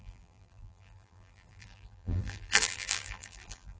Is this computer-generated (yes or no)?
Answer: yes